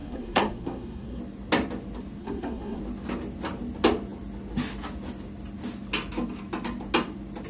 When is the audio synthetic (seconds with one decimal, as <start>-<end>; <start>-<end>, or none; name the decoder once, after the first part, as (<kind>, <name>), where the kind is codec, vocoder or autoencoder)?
0.0-1.2 (codec, SNAC); 2.2-2.8